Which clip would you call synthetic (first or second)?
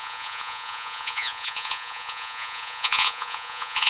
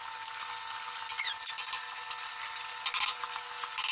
first